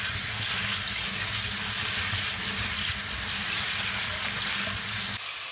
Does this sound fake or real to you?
real